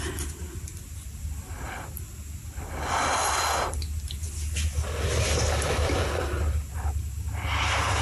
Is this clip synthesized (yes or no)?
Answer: no